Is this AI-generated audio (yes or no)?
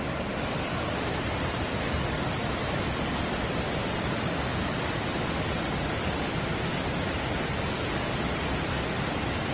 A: no